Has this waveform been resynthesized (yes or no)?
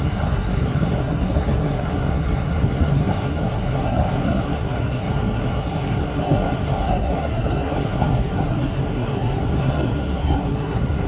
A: yes